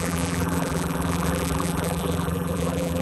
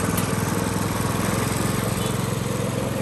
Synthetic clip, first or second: first